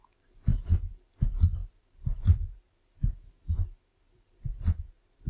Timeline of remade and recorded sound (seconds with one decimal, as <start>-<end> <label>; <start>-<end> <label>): 0.0-1.6 recorded; 1.6-4.8 remade; 4.8-5.3 recorded